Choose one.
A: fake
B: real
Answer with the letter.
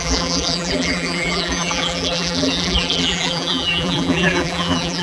A